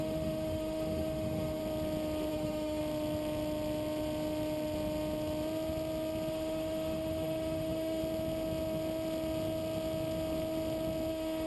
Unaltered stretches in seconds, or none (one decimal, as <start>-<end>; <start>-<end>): 1.6-2.3; 2.8-6.3; 8.0-11.1